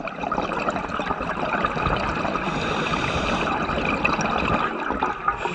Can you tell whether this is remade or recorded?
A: recorded